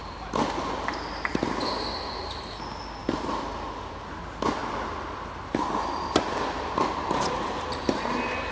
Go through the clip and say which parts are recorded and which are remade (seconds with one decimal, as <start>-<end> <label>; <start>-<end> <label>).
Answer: 0.0-8.5 recorded